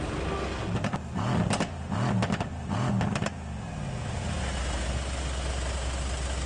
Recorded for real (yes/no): yes